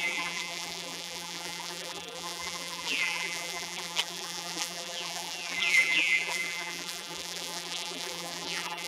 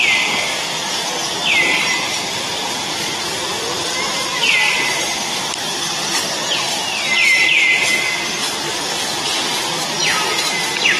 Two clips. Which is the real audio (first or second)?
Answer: second